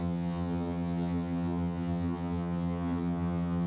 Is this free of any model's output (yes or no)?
no